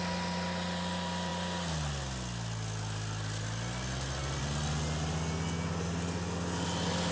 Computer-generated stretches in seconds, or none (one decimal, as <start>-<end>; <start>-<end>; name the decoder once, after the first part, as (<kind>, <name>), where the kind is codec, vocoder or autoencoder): none